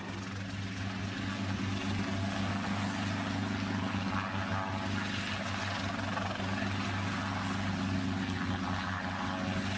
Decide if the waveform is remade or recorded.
recorded